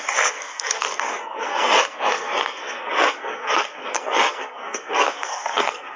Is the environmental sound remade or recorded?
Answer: remade